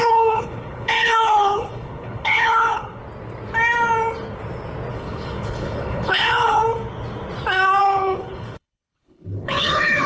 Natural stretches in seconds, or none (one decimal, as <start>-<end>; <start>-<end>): 3.0-4.9; 6.6-7.8